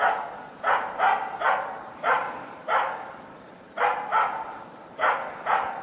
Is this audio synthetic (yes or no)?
no